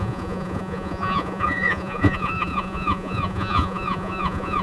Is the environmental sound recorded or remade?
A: remade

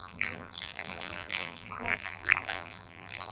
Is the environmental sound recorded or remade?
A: remade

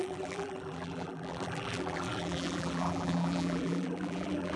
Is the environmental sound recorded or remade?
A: remade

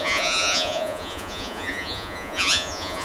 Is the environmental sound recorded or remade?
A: remade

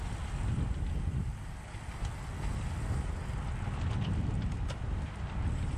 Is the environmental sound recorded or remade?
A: recorded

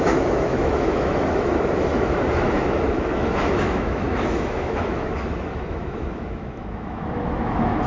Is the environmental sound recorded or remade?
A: remade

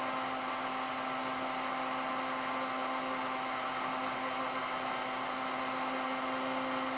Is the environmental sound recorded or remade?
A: recorded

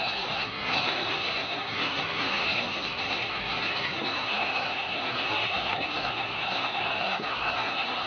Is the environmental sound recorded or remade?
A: remade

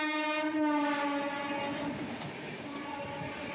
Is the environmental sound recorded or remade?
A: recorded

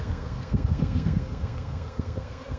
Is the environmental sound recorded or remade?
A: remade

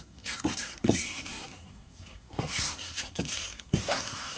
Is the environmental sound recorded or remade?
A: remade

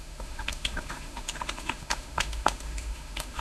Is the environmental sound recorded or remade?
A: remade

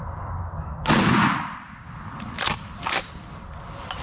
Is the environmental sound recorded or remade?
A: recorded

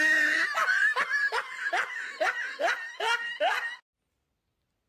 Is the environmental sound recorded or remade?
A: recorded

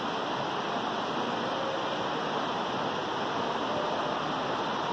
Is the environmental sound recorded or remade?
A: recorded